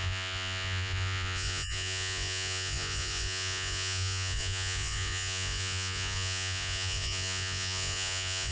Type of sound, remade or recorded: remade